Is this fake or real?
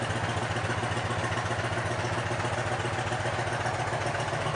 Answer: real